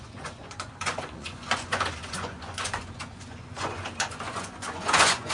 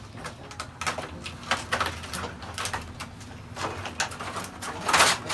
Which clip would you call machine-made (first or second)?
first